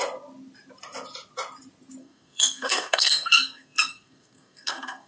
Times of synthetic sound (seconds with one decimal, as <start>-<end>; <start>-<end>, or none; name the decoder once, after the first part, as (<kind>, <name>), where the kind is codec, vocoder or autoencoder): 2.0-5.1 (codec, SNAC)